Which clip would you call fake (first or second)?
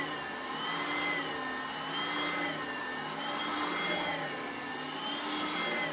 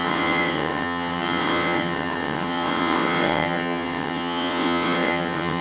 second